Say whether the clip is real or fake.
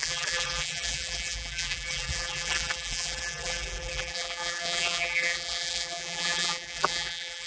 fake